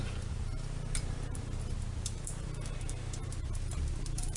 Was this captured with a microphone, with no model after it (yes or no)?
yes